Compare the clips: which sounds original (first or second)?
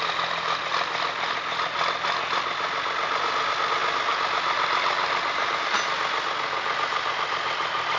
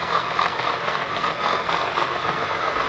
first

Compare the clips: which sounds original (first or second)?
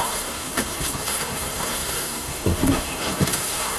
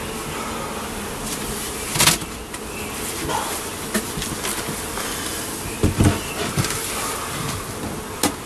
second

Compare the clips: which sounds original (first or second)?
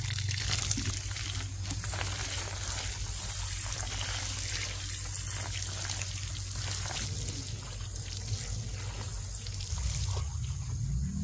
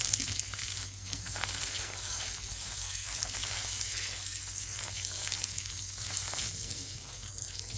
first